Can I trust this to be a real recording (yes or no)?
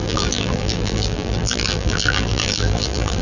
no